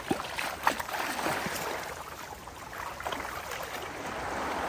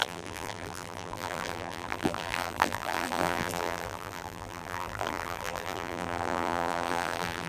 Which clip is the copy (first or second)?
second